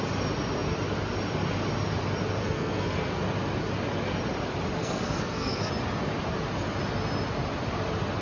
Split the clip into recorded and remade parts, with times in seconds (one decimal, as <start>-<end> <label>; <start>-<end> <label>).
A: 0.0-2.4 recorded; 2.4-3.2 remade; 3.2-4.8 recorded; 4.8-5.7 remade; 5.7-8.2 recorded